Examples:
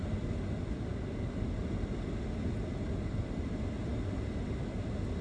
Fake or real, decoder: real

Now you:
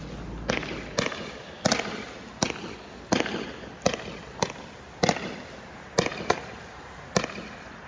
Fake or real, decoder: real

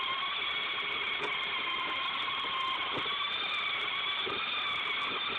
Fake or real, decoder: real